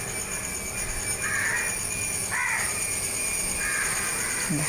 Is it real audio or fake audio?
real